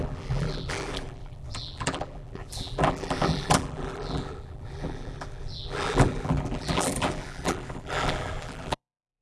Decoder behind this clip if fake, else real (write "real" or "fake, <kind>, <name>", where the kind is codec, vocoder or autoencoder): fake, vocoder, BigVGAN v2